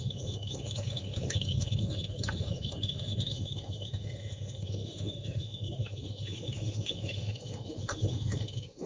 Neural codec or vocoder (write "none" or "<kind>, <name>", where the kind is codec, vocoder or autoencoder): autoencoder, DAC-VAE